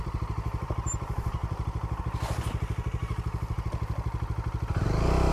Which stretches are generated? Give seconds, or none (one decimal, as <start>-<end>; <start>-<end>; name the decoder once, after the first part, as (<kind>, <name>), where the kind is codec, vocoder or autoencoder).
0.0-3.0 (vocoder, BigVGAN v2)